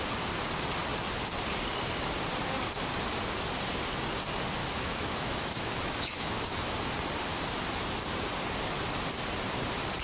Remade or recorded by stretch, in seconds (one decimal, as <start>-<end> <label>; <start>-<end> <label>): 0.0-4.6 recorded; 4.6-6.7 remade; 6.7-10.0 recorded